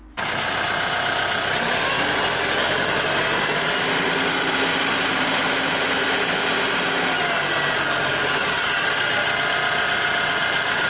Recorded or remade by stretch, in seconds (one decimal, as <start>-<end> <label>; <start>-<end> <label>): 0.0-4.7 recorded; 4.7-6.4 remade; 6.4-10.9 recorded